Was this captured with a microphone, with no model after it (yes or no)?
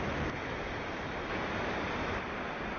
yes